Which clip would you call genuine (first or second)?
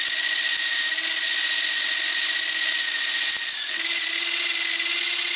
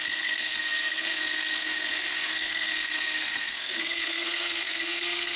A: first